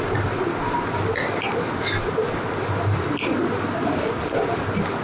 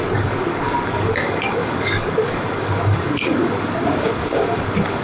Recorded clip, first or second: first